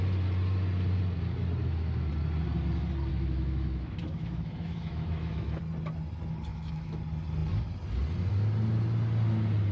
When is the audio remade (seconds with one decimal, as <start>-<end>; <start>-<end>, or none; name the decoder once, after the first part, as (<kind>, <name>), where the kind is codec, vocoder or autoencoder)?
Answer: 1.6-2.1 (autoencoder, DAC-VAE); 3.1-5.6; 6.5-7.0